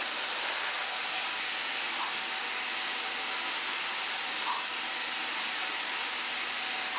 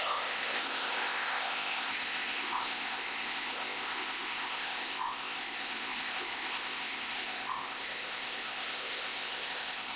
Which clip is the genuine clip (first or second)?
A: first